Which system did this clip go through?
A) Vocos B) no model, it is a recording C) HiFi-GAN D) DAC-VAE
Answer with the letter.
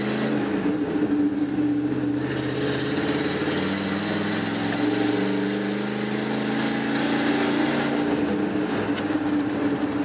B